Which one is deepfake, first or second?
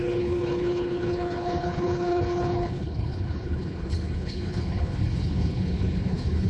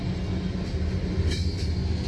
first